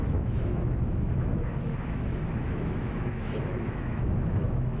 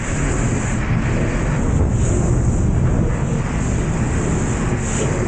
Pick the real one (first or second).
second